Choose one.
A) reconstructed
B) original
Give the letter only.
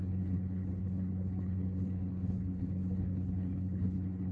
A